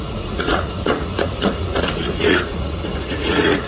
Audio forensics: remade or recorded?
remade